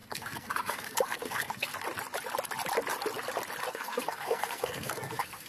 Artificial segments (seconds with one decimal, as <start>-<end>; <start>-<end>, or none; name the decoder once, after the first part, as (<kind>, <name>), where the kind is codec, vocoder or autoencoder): 0.0-1.7 (codec, SNAC); 3.7-5.5